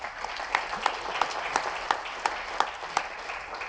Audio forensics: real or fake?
real